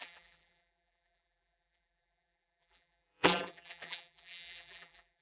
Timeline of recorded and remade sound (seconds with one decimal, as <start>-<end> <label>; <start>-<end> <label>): 0.0-5.2 remade